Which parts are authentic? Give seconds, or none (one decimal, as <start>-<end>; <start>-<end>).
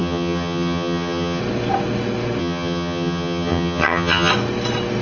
1.4-2.4; 4.3-5.0